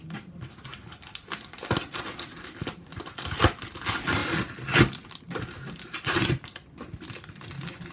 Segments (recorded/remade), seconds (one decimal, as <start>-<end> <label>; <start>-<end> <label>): 0.0-7.9 recorded